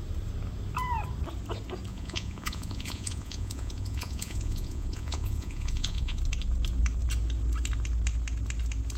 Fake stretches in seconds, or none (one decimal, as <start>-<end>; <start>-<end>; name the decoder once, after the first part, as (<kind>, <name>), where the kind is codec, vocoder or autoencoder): 1.9-6.2 (vocoder, Vocos)